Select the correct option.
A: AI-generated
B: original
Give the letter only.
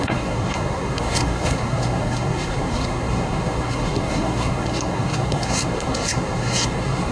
A